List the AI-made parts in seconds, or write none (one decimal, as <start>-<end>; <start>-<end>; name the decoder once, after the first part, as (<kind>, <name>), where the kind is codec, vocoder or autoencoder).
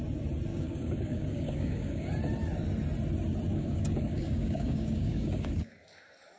0.5-2.1 (codec, DAC); 3.5-5.7